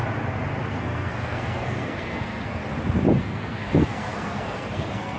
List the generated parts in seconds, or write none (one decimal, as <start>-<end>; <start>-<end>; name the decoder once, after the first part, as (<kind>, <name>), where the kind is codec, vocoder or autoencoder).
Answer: 0.7-2.6 (codec, SNAC); 3.2-5.2